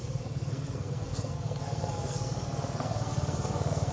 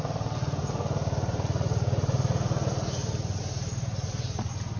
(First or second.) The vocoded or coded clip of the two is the first